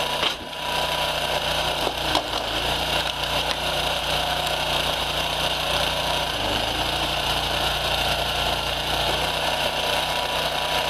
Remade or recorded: remade